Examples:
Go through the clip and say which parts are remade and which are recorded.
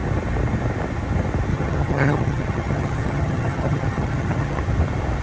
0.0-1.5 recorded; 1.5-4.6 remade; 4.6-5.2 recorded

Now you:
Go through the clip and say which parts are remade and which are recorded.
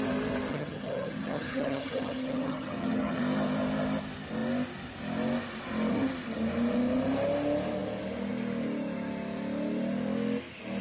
0.0-0.5 recorded; 0.5-3.2 remade; 3.2-10.8 recorded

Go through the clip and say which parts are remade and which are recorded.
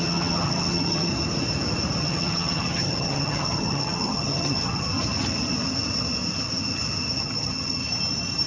0.0-1.1 remade; 1.1-2.0 recorded; 2.0-4.9 remade; 4.9-7.2 recorded; 7.2-7.8 remade; 7.8-8.5 recorded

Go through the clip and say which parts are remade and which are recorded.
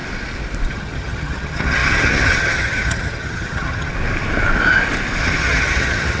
0.0-0.7 recorded; 0.7-3.9 remade; 3.9-5.2 recorded; 5.2-6.2 remade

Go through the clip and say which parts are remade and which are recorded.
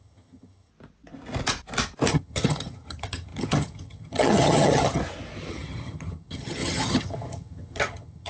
0.0-0.7 remade; 0.7-2.1 recorded; 2.1-5.0 remade; 5.0-5.5 recorded; 5.5-8.3 remade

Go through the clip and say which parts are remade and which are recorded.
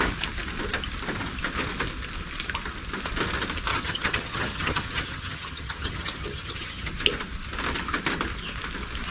0.0-3.7 recorded; 3.7-6.9 remade; 6.9-9.1 recorded